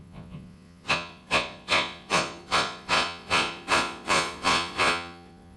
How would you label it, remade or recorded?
remade